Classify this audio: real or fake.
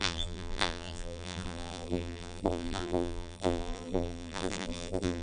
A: fake